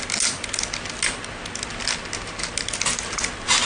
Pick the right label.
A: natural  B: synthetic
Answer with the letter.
A